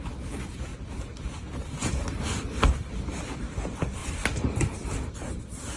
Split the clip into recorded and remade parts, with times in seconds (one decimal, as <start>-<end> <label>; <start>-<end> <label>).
0.0-5.8 recorded